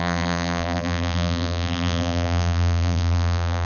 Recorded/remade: remade